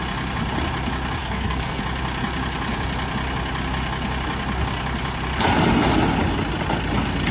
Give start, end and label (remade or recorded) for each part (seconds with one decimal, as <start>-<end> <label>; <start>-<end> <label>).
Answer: 0.0-1.2 recorded; 1.2-1.8 remade; 1.8-7.3 recorded